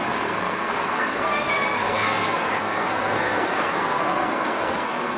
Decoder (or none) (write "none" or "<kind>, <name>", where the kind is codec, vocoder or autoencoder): codec, SNAC